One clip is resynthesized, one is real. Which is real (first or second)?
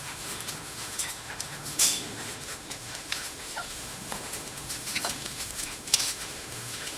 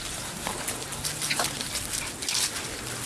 second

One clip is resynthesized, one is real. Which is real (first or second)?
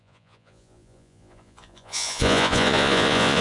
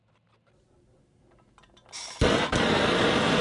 second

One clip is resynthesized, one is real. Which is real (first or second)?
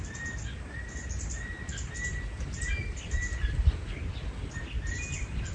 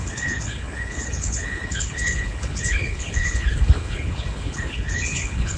first